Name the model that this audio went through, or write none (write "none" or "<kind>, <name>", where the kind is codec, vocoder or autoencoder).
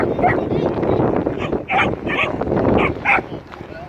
none